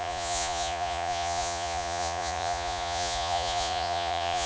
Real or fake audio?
fake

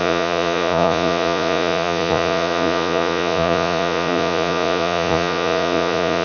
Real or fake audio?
fake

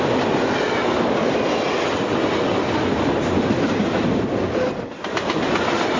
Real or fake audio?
real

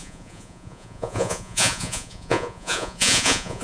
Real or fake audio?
fake